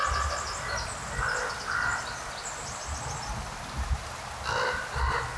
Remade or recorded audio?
recorded